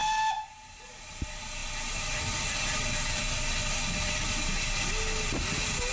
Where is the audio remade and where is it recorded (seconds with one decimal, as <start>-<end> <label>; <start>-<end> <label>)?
0.0-0.8 remade; 0.8-5.9 recorded